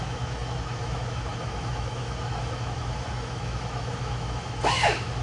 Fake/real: fake